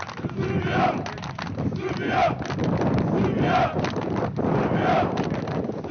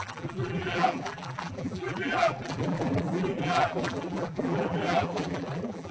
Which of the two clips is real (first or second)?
first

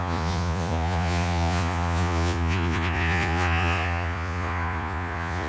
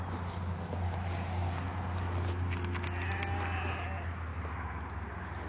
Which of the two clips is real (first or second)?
second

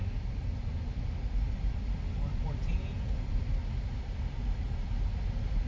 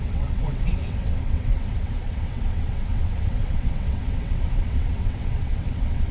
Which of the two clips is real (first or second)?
first